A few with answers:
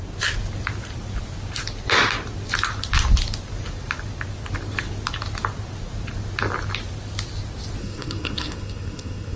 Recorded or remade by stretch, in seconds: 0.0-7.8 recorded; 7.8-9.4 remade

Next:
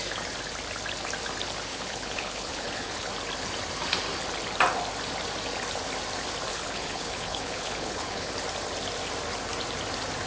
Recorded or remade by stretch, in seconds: 0.0-1.7 recorded; 1.7-3.1 remade; 3.1-6.5 recorded; 6.5-8.3 remade; 8.3-10.3 recorded

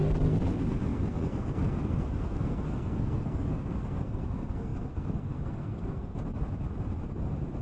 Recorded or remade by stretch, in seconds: 0.0-6.2 remade; 6.2-7.6 recorded